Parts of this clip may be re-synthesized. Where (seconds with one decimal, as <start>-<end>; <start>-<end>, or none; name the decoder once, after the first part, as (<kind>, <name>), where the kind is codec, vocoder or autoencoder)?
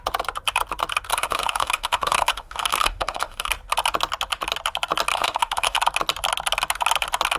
1.1-3.5 (autoencoder, DAC-VAE); 5.1-5.8